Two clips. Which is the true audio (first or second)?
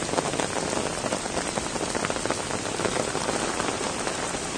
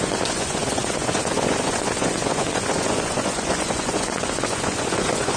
first